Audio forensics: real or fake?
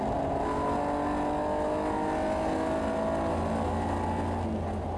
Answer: real